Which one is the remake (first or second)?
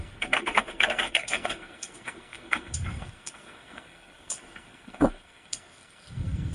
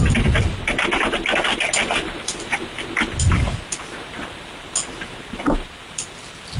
first